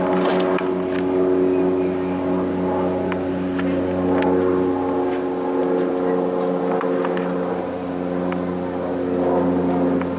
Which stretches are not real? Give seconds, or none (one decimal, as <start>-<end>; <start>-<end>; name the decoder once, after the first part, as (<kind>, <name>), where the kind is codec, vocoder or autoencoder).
none